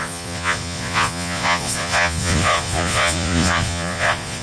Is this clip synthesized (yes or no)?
yes